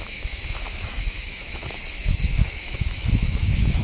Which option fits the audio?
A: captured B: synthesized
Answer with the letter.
B